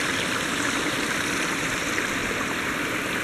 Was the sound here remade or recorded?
remade